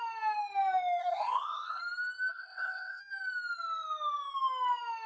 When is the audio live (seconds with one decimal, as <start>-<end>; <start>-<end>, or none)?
0.0-1.0; 1.8-2.3; 3.0-5.1